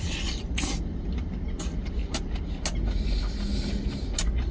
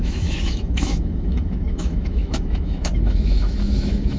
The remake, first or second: second